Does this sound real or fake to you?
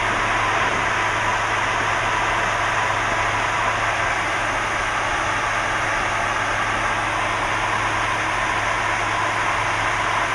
real